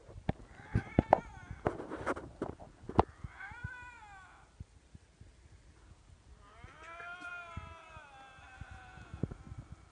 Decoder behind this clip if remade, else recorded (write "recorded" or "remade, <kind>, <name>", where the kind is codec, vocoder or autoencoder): recorded